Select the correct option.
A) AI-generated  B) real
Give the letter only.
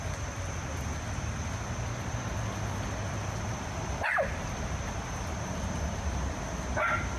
B